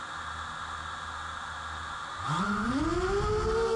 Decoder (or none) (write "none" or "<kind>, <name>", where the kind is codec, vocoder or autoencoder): none